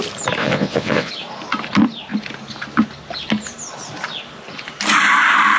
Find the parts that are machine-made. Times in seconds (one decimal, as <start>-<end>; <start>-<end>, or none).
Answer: 0.4-1.1